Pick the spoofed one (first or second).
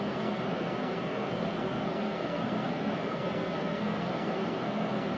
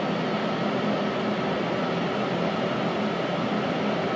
first